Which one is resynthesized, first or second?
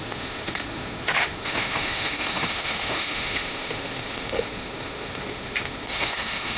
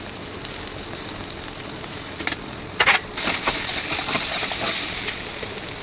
first